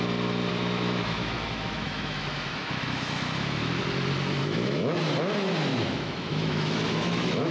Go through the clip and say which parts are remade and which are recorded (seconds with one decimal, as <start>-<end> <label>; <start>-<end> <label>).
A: 0.0-0.5 recorded; 0.5-3.8 remade; 3.8-4.4 recorded; 4.4-5.0 remade; 5.0-5.7 recorded; 5.7-7.5 remade